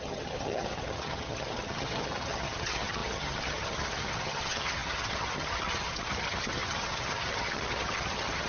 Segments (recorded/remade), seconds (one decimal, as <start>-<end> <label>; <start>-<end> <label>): 0.0-8.5 remade